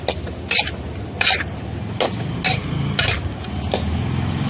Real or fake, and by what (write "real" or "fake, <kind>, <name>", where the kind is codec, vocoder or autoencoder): real